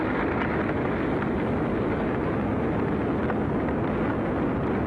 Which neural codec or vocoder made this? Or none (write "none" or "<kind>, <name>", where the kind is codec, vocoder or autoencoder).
none